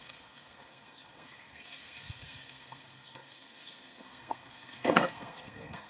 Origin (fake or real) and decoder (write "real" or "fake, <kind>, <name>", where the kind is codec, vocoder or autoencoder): fake, codec, SNAC